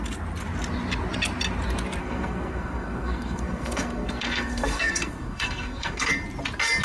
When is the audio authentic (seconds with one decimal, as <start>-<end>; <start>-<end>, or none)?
0.0-2.0; 6.1-6.8